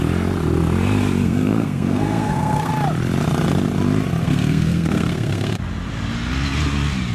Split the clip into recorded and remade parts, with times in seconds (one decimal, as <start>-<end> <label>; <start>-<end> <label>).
0.0-1.2 recorded; 1.2-2.7 remade; 2.7-4.2 recorded; 4.2-5.6 remade; 5.6-7.1 recorded